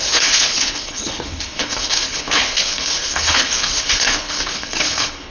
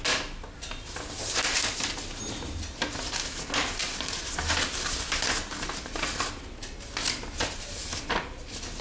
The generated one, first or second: first